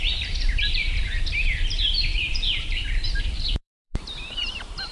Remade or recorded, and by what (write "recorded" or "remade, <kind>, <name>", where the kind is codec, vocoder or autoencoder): remade, vocoder, BigVGAN v2